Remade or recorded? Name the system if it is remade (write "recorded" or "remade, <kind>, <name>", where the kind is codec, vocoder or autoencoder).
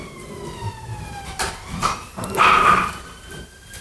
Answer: remade, vocoder, BigVGAN v2